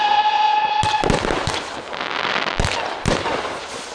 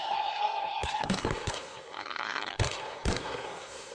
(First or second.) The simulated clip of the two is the second